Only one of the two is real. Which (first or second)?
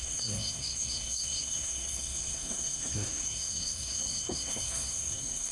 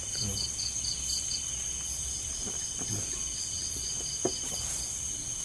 second